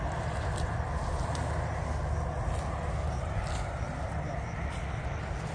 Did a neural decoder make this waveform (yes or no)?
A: no